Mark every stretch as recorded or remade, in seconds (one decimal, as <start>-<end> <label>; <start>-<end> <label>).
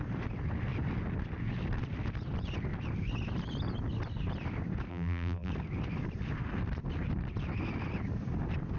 0.0-4.9 recorded; 4.9-5.5 remade; 5.5-8.8 recorded